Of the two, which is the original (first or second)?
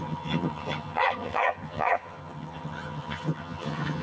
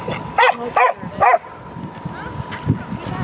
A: second